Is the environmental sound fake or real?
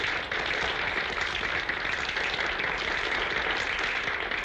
real